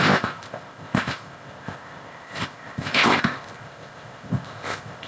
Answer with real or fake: fake